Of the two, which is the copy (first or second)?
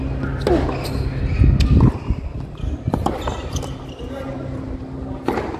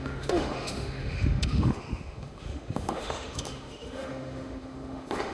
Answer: second